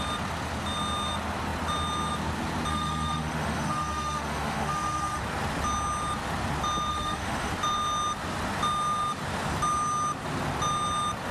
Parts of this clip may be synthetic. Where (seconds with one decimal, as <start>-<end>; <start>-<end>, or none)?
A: 2.7-5.2; 6.9-7.5